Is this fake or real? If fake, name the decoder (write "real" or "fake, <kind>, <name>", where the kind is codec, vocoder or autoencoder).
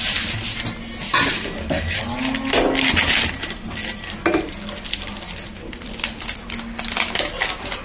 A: real